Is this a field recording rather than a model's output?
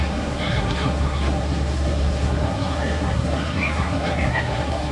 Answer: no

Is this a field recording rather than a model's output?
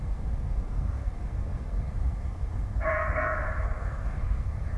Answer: no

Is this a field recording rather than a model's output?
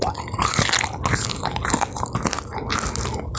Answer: yes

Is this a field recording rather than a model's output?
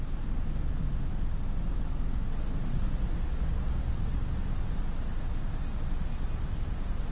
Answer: yes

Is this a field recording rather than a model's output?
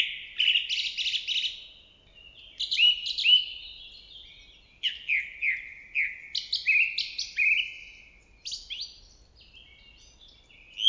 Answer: yes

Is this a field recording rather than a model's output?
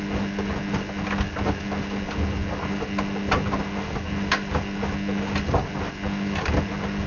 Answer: yes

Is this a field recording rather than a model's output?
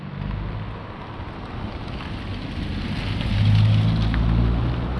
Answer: yes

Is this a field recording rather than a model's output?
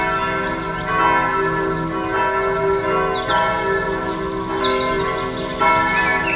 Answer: yes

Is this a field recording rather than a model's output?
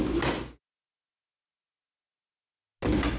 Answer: yes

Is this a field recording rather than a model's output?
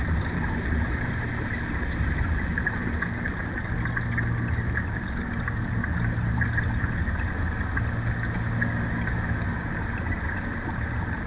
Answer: yes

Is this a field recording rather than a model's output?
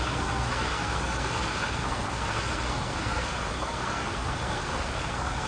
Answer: no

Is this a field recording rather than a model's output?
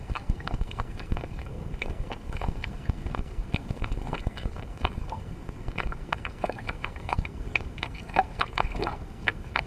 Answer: no